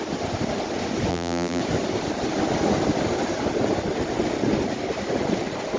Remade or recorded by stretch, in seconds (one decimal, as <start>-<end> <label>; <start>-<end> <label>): 0.0-1.1 recorded; 1.1-1.6 remade; 1.6-5.8 recorded

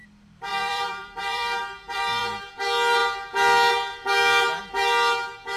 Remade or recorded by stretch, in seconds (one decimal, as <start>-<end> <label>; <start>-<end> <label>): 0.0-0.5 recorded; 0.5-2.5 remade; 2.5-5.6 recorded

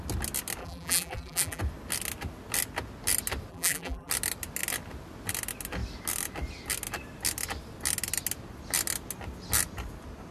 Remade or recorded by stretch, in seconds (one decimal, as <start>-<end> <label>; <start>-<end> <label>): 0.0-0.6 recorded; 0.6-1.6 remade; 1.6-3.5 recorded; 3.5-4.1 remade; 4.1-10.3 recorded

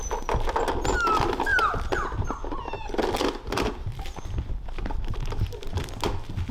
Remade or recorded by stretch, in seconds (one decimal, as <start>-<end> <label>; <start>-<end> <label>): 0.0-6.5 recorded